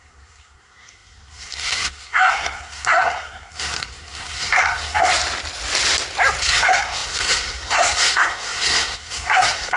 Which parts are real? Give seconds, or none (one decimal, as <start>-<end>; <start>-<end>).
5.1-6.4